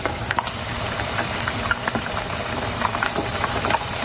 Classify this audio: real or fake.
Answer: fake